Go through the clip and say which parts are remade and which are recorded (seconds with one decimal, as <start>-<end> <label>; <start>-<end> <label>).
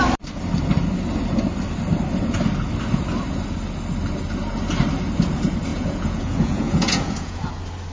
0.0-5.7 recorded; 5.7-7.5 remade; 7.5-7.9 recorded